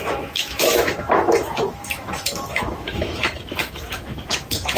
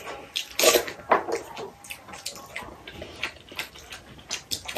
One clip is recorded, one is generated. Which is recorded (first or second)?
second